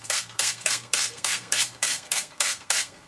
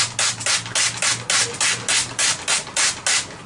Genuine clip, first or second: second